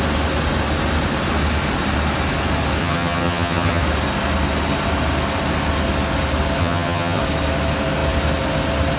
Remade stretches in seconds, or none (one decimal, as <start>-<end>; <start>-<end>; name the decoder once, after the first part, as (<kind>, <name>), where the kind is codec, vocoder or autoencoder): 2.8-3.8 (vocoder, HiFi-GAN); 6.6-7.2